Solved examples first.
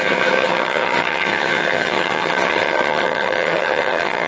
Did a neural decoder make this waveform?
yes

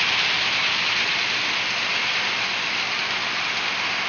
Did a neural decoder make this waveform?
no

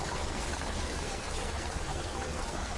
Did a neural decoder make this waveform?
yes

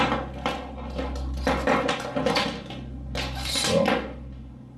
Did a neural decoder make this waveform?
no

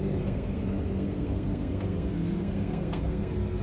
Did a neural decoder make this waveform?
yes